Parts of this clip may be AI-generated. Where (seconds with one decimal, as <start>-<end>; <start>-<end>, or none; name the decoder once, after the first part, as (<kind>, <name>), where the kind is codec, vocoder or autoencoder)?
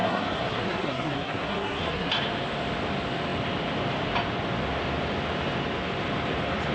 0.0-2.1 (codec, SNAC)